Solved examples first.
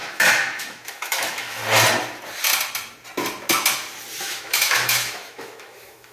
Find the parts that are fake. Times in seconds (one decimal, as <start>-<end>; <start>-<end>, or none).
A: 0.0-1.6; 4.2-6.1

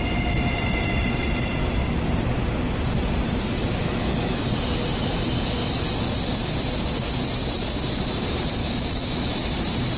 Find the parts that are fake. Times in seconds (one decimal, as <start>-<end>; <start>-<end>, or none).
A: 3.8-4.4; 8.6-9.5

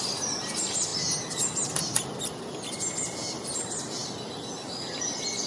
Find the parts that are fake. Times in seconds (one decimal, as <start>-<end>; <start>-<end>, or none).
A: 0.0-0.9; 1.8-4.0; 5.0-5.5

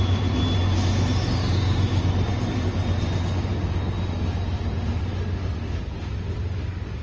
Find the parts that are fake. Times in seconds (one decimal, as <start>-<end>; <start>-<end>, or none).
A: 1.4-2.1

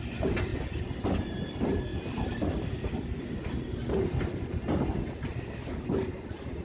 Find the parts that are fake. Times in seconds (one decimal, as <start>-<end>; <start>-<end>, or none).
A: 0.0-0.5; 1.5-6.6

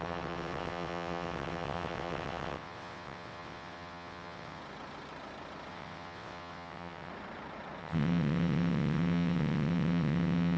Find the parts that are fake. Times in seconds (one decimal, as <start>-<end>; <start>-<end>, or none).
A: 0.0-4.6; 5.7-7.1; 7.8-10.6